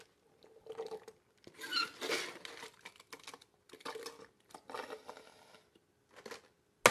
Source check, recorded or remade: recorded